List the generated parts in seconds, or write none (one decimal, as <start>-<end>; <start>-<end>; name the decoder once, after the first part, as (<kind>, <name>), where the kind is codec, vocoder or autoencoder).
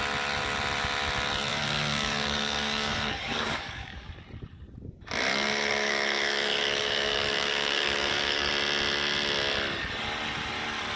1.5-4.1 (codec, DAC); 5.3-8.5